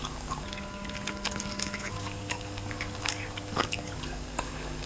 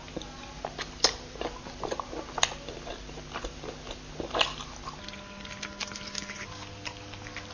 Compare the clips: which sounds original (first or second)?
second